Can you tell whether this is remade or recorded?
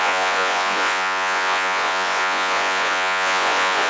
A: remade